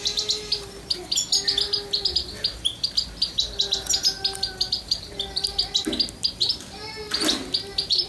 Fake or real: real